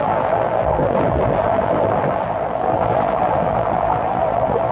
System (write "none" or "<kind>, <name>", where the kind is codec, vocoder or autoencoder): vocoder, BigVGAN v2